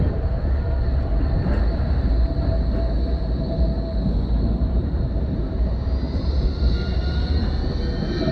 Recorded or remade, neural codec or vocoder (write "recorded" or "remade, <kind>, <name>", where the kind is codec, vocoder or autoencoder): recorded